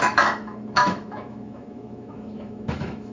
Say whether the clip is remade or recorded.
remade